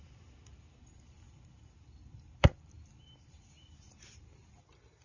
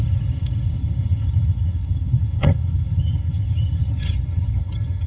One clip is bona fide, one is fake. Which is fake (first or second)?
second